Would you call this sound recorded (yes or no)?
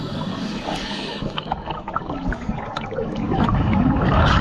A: no